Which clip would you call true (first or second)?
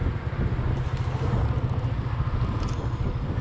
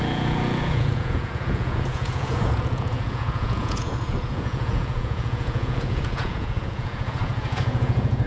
first